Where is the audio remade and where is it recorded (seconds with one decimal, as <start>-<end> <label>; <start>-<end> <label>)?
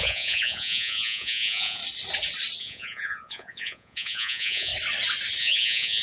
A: 0.0-1.8 remade; 1.8-2.6 recorded; 2.6-4.7 remade; 4.7-5.4 recorded; 5.4-6.0 remade